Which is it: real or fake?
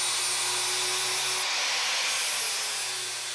real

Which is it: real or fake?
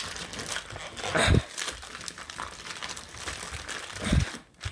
real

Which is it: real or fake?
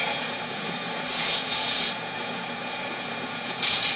fake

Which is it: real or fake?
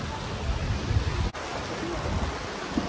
real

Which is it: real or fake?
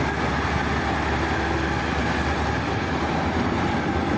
real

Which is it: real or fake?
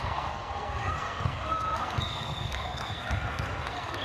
fake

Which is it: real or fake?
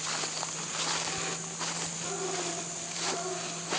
real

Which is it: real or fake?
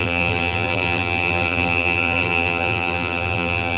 fake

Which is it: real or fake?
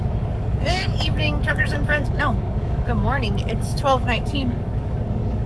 fake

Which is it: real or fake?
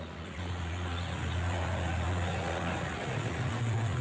fake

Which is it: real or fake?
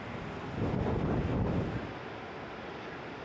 real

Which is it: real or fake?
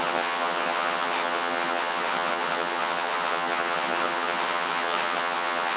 fake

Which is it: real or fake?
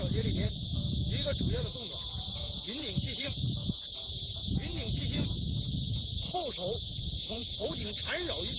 fake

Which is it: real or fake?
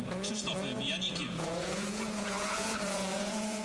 fake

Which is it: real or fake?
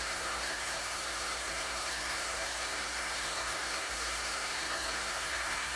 fake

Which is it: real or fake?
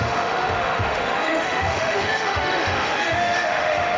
fake